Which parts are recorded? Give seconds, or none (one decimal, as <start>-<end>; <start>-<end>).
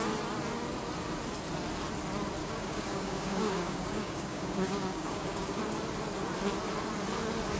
0.0-2.4; 5.6-7.6